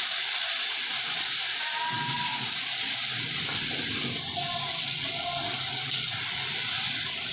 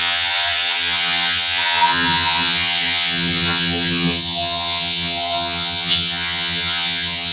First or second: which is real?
first